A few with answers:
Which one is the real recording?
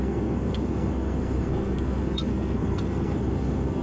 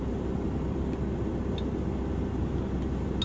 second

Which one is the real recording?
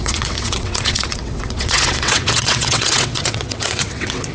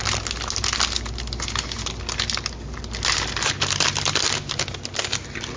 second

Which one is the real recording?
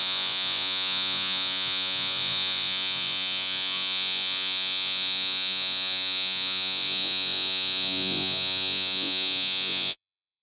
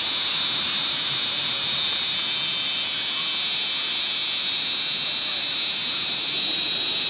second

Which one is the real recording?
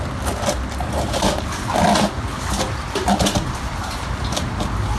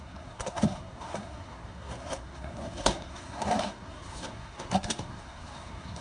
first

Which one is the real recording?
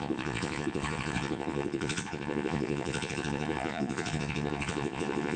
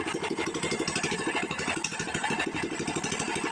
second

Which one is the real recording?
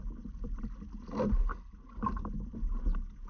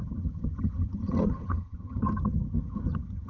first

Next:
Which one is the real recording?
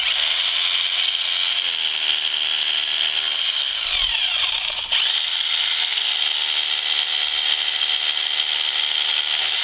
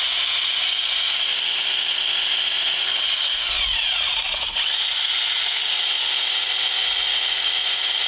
first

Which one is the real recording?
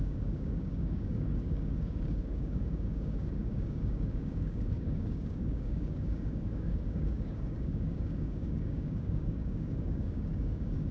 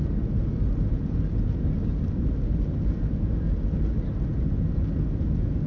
second